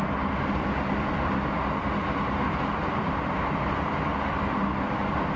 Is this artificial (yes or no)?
no